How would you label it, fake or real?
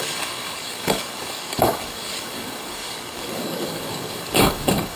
fake